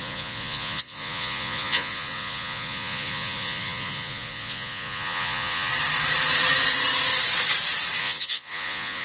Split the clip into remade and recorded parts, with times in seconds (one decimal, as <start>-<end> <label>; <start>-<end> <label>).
0.0-5.7 remade; 5.7-8.0 recorded; 8.0-9.0 remade